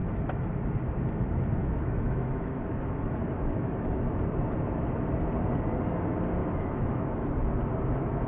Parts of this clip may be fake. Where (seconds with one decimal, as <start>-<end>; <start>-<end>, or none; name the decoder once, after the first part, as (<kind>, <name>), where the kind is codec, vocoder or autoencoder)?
0.0-0.5 (autoencoder, DAC-VAE); 1.6-4.2; 6.4-7.1